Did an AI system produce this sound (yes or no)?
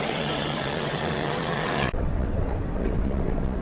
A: yes